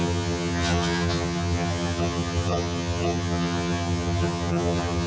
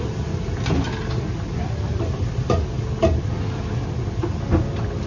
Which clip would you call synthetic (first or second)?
first